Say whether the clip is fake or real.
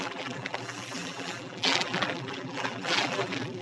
fake